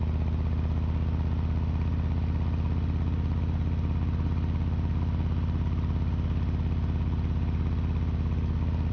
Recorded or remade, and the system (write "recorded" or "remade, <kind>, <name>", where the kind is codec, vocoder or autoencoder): recorded